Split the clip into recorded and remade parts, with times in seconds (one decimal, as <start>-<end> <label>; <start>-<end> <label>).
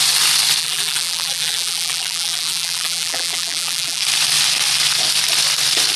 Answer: 0.0-0.6 recorded; 0.6-4.0 remade; 4.0-6.0 recorded